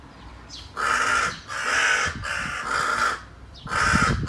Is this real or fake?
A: real